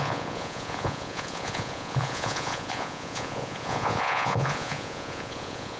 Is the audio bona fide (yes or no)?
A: no